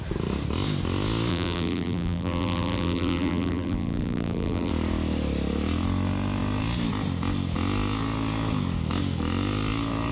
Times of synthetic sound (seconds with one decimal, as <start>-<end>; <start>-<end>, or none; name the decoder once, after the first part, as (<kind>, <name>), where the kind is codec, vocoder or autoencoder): 1.3-4.7 (vocoder, BigVGAN v2)